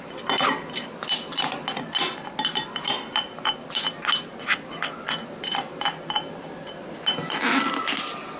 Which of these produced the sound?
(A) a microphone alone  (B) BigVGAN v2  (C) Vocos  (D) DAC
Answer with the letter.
A